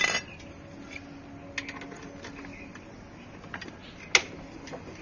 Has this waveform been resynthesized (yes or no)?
no